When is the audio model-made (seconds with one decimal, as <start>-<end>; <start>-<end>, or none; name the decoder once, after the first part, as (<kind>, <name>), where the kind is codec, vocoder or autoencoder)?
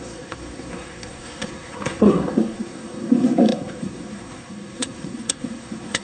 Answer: 0.0-6.0 (codec, SNAC)